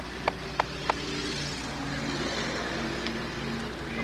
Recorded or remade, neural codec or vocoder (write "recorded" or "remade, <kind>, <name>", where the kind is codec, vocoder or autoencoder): recorded